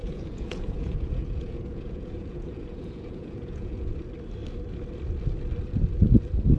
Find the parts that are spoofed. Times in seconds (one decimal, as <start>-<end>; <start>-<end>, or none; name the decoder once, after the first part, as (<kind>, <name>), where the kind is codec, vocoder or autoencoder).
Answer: 0.0-3.9 (vocoder, Vocos)